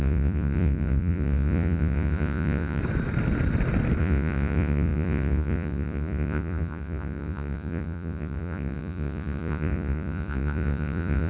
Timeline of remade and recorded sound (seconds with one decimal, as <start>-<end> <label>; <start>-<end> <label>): 0.0-2.8 remade; 2.8-4.0 recorded; 4.0-11.3 remade

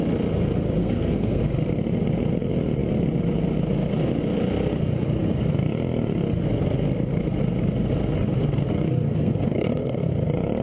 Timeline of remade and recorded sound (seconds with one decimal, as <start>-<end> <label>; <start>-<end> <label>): 0.0-0.8 recorded; 0.8-1.4 remade; 1.4-8.7 recorded; 8.7-10.1 remade; 10.1-10.6 recorded

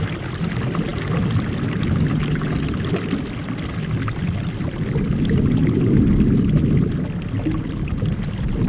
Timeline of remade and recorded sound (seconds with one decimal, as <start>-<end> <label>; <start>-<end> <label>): 0.0-8.7 recorded

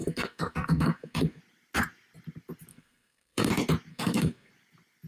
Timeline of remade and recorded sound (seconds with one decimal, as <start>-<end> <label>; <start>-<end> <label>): 0.0-1.4 remade; 1.4-2.7 recorded; 2.7-3.5 remade; 3.5-3.9 recorded; 3.9-4.5 remade; 4.5-5.1 recorded

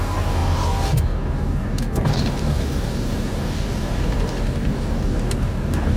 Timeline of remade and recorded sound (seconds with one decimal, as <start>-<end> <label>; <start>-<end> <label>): 0.0-6.0 remade

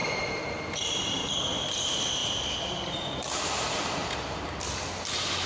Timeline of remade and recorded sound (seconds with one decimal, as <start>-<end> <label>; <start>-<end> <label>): 0.0-1.3 remade; 1.3-5.5 recorded

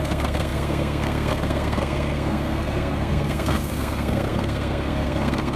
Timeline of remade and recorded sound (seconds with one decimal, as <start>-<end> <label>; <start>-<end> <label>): 0.0-5.6 remade

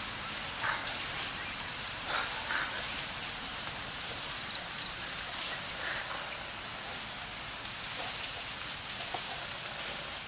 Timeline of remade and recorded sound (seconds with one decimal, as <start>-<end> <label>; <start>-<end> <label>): 0.0-0.8 recorded; 0.8-5.2 remade; 5.2-10.3 recorded